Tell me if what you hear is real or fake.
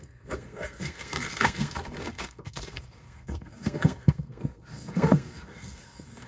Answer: fake